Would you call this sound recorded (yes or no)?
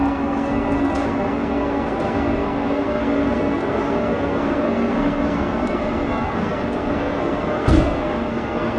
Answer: no